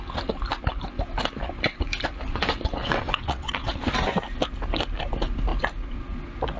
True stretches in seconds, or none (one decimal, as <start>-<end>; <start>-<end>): 0.0-2.8; 3.7-6.6